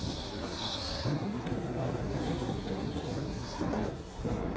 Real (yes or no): no